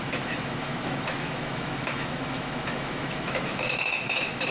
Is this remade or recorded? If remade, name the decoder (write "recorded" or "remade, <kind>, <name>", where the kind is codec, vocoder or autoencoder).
remade, autoencoder, DAC-VAE